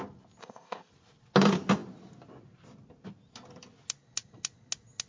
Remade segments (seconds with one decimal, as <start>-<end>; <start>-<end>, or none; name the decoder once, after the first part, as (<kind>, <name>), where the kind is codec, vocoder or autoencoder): 0.4-0.9 (codec, ZipCodec)